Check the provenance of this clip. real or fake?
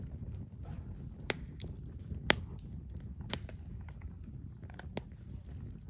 real